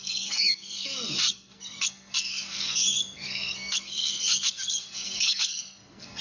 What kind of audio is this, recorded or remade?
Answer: remade